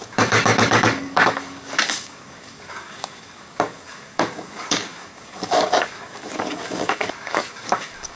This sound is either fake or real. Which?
fake